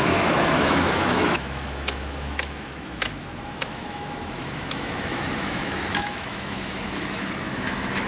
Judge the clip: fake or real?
fake